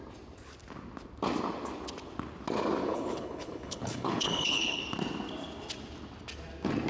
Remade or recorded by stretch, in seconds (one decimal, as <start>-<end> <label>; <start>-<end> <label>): 0.0-2.8 recorded; 2.8-4.8 remade; 4.8-6.9 recorded